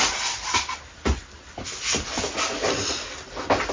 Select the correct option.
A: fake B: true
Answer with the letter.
B